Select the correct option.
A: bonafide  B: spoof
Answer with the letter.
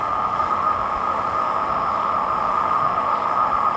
B